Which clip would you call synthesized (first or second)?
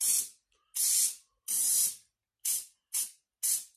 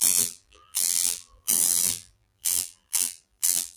second